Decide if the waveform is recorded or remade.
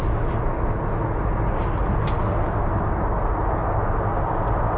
recorded